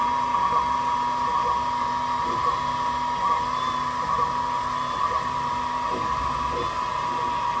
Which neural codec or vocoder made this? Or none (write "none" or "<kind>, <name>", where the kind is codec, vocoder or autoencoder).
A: none